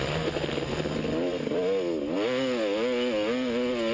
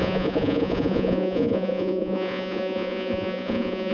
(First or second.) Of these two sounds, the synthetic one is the second